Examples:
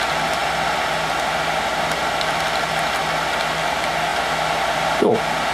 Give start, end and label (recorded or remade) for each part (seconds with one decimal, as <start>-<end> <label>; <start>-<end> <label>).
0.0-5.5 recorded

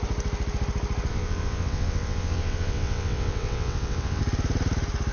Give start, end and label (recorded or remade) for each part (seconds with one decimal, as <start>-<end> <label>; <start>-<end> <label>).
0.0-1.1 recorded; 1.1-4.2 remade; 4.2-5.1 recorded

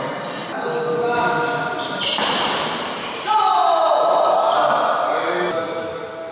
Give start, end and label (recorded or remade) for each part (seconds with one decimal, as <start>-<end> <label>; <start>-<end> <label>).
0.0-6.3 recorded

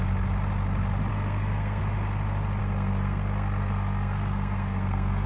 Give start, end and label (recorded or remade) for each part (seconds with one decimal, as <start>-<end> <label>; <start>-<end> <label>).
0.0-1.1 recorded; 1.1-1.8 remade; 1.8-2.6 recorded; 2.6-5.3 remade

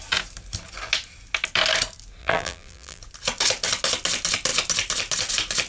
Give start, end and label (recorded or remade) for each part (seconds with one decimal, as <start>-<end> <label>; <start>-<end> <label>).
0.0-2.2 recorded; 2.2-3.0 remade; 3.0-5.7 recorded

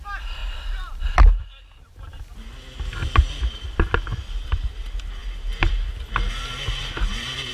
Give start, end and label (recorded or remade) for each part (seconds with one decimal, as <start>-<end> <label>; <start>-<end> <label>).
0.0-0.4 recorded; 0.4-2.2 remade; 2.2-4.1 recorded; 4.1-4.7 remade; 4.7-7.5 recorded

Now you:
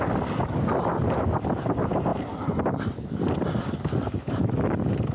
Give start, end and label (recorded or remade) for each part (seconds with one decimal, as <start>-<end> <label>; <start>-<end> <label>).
0.0-5.1 recorded